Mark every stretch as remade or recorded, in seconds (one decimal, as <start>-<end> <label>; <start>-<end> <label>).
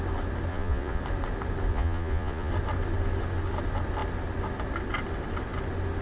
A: 0.0-0.5 recorded; 0.5-1.0 remade; 1.0-1.7 recorded; 1.7-2.5 remade; 2.5-6.0 recorded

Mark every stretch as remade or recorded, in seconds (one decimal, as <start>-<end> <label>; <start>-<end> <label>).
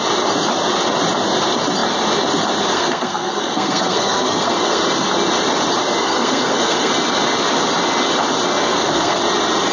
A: 0.0-2.7 recorded; 2.7-4.8 remade; 4.8-6.0 recorded; 6.0-6.9 remade; 6.9-8.6 recorded; 8.6-9.2 remade; 9.2-9.7 recorded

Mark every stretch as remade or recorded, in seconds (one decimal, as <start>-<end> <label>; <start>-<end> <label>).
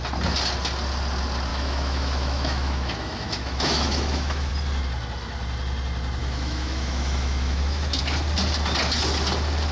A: 0.0-1.5 recorded; 1.5-4.5 remade; 4.5-6.2 recorded; 6.2-8.0 remade; 8.0-9.7 recorded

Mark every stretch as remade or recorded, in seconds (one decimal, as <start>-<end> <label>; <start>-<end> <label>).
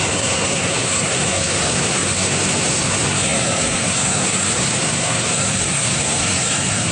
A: 0.0-6.9 remade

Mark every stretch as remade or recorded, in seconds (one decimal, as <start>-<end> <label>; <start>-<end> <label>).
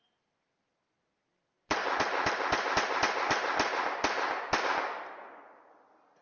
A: 0.0-1.8 remade; 1.8-4.6 recorded; 4.6-6.2 remade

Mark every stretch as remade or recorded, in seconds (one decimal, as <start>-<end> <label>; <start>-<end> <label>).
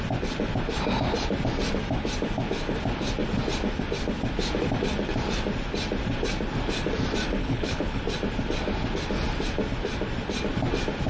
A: 0.0-7.4 recorded; 7.4-8.0 remade; 8.0-11.1 recorded